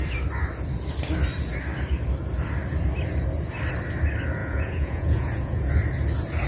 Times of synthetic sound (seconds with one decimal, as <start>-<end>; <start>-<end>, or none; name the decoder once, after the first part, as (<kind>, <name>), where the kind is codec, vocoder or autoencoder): 4.4-5.7 (vocoder, Vocos)